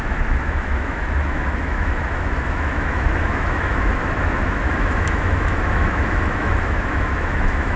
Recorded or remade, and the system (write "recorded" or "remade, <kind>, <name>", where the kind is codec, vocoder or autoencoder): remade, autoencoder, DAC-VAE